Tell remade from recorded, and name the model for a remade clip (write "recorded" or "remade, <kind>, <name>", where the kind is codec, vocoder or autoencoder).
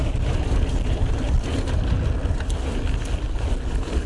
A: recorded